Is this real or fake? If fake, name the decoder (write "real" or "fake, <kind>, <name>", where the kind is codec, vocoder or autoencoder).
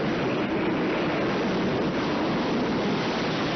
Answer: real